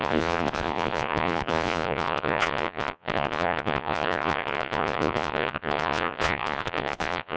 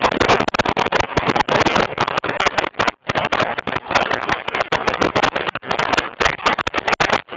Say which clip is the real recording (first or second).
second